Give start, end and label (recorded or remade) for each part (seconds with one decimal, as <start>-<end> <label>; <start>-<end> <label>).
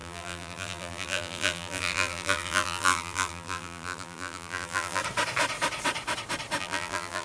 0.0-5.0 remade; 5.0-6.6 recorded; 6.6-7.2 remade